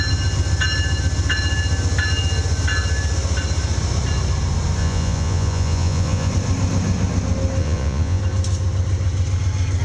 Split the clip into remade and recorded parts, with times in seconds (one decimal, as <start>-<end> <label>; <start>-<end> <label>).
0.0-4.8 recorded; 4.8-6.3 remade; 6.3-7.6 recorded; 7.6-8.2 remade; 8.2-9.8 recorded